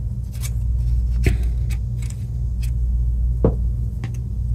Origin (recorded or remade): recorded